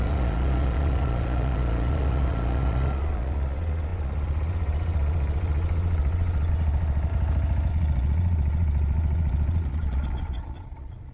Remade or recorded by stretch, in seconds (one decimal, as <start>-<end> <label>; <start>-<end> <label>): 0.0-7.1 remade; 7.1-7.7 recorded; 7.7-11.1 remade